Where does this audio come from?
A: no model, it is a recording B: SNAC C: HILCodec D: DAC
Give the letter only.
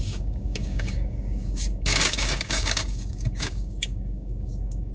D